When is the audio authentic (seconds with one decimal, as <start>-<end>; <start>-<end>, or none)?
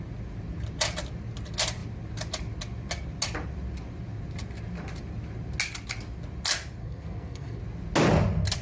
0.0-6.8; 7.6-8.6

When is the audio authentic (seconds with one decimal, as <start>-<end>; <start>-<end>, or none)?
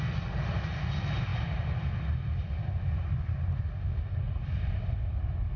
0.0-5.6